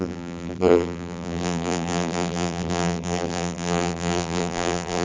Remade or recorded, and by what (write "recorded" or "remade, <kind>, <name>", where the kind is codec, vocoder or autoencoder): remade, vocoder, BigVGAN v2